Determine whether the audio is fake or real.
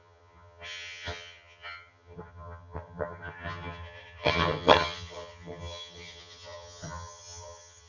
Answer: fake